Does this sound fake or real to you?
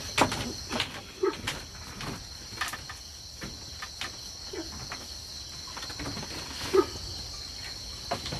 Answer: real